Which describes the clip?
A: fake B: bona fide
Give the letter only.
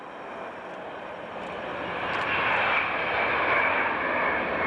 B